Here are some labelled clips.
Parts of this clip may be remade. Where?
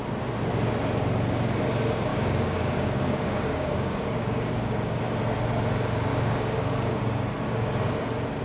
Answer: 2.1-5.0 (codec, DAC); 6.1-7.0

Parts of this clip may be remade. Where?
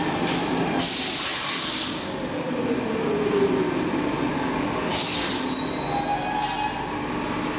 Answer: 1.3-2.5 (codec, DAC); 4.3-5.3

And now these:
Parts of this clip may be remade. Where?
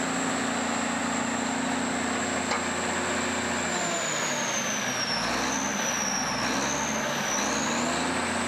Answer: none